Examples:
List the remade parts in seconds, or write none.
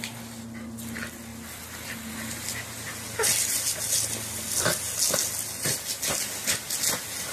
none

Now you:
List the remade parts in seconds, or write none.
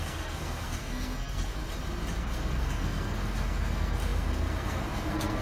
0.0-1.6 (codec, SNAC); 2.2-5.4